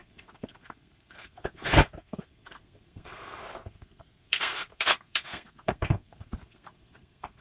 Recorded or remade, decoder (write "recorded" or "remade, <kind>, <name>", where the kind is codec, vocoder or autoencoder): remade, codec, SNAC